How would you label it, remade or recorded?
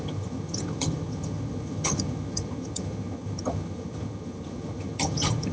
remade